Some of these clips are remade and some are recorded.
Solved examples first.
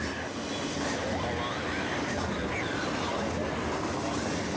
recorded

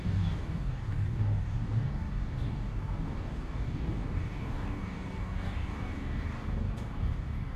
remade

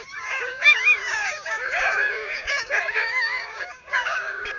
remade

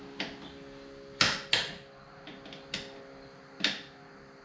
recorded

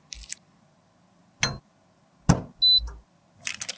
recorded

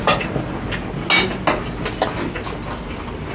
recorded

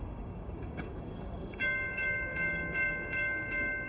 remade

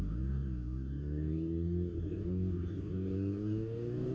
remade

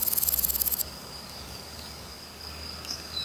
remade